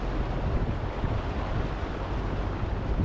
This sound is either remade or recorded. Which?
recorded